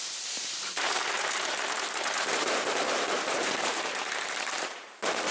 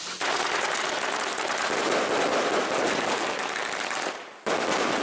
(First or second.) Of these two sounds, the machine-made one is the first